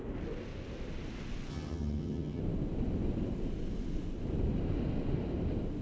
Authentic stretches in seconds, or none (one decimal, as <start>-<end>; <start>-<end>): 0.0-1.5; 2.4-5.8